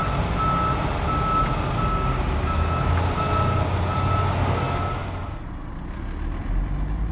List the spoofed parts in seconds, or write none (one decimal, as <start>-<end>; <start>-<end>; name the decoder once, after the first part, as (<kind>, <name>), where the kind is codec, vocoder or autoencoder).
none